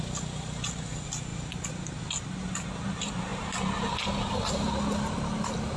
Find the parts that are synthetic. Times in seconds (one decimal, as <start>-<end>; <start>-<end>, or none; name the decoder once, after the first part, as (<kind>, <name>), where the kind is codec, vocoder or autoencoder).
none